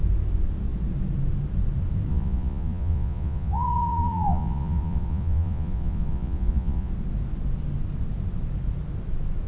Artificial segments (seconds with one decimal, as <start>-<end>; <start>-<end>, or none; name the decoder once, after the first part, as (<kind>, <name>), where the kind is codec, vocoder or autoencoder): 2.1-6.9 (vocoder, Vocos)